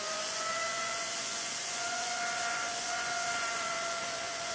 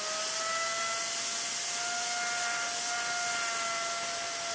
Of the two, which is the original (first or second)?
second